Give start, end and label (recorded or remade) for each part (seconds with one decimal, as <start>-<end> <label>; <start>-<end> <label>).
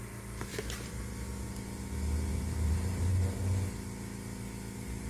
0.0-0.5 recorded; 0.5-1.0 remade; 1.0-2.3 recorded; 2.3-3.2 remade; 3.2-5.1 recorded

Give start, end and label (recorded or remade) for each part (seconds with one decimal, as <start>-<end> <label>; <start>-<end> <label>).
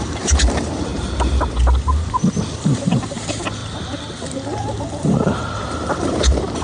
0.0-0.9 remade; 0.9-2.6 recorded; 2.6-3.6 remade; 3.6-5.0 recorded; 5.0-6.6 remade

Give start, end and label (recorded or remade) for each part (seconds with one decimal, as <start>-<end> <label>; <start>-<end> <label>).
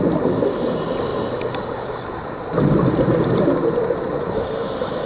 0.0-5.1 recorded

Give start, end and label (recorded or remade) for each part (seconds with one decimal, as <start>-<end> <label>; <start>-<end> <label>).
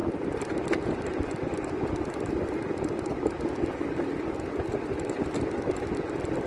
0.0-3.9 remade; 3.9-6.5 recorded